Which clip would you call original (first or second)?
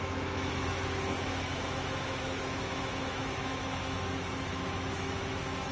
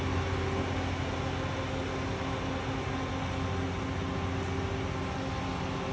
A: second